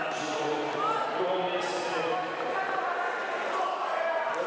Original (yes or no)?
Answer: yes